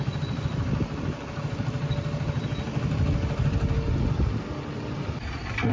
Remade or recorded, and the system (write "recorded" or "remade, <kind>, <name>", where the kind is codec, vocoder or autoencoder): recorded